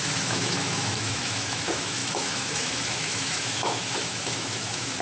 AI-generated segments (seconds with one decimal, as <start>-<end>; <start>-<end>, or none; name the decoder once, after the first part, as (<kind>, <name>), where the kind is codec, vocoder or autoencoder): 0.0-5.0 (autoencoder, DAC-VAE)